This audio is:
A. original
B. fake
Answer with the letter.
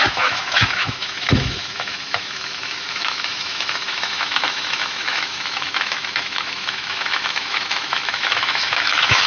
B